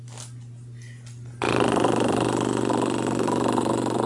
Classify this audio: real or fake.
real